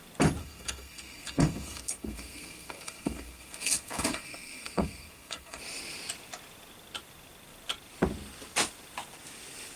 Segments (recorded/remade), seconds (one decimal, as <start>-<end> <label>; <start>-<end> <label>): 0.0-0.4 recorded; 0.4-5.6 remade; 5.6-9.8 recorded

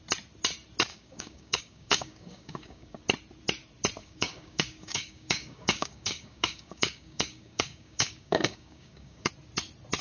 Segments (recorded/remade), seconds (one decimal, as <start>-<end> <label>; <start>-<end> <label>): 0.0-0.9 recorded; 0.9-3.0 remade; 3.0-4.0 recorded; 4.0-9.3 remade; 9.3-10.0 recorded

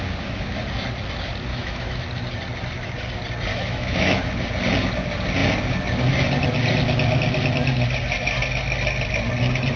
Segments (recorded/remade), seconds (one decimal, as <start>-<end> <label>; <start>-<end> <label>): 0.0-1.5 recorded; 1.5-2.0 remade; 2.0-3.5 recorded; 3.5-4.3 remade; 4.3-9.8 recorded

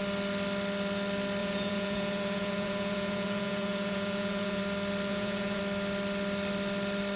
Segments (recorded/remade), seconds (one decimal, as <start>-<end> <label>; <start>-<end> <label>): 0.0-1.4 recorded; 1.4-4.6 remade; 4.6-5.1 recorded; 5.1-5.6 remade; 5.6-7.2 recorded

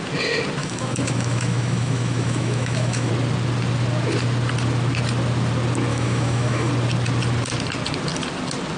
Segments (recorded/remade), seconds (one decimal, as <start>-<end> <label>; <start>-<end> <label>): 0.0-0.6 recorded; 0.6-3.1 remade; 3.1-5.9 recorded; 5.9-6.7 remade; 6.7-8.8 recorded

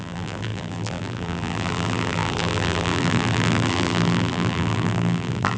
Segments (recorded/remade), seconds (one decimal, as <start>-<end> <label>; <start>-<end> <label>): 0.0-5.6 remade

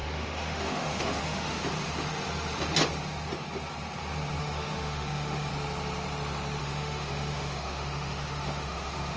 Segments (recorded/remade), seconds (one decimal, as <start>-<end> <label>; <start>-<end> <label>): 0.0-1.6 remade; 1.6-4.4 recorded; 4.4-5.5 remade; 5.5-6.6 recorded; 6.6-9.2 remade

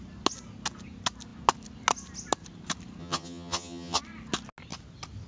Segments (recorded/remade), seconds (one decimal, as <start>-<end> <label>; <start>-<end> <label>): 0.0-3.0 recorded; 3.0-4.0 remade; 4.0-5.3 recorded